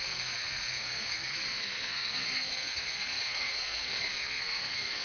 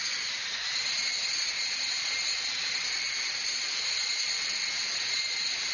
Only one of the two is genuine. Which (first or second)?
second